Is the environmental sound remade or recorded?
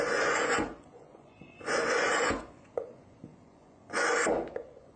remade